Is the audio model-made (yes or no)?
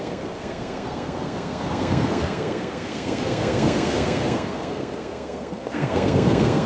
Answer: yes